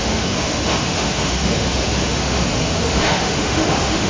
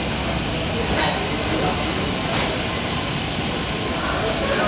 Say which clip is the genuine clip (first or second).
second